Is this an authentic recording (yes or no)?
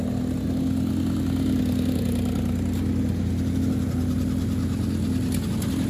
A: yes